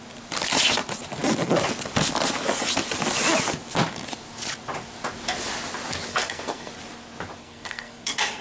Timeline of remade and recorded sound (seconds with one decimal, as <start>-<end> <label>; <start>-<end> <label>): 0.0-6.1 recorded; 6.1-6.7 remade; 6.7-7.4 recorded; 7.4-8.4 remade